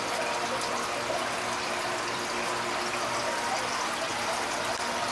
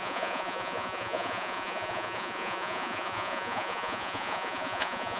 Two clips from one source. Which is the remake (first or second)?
second